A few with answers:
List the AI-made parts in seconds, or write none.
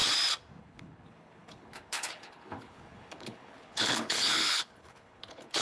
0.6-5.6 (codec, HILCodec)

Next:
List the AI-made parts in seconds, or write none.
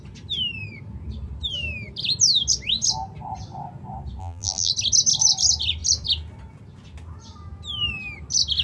4.2-4.7 (vocoder, BigVGAN v2)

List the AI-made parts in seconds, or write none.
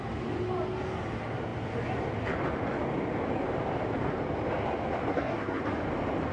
5.1-5.6 (codec, SNAC)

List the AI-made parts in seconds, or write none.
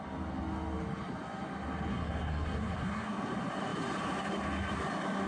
1.9-3.3 (codec, SNAC)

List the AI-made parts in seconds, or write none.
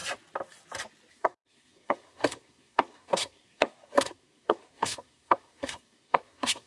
1.1-6.7 (codec, SNAC)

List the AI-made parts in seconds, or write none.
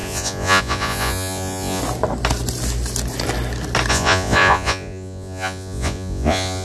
0.0-1.8 (vocoder, Vocos); 3.9-6.6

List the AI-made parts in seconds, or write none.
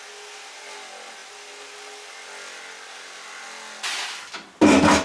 none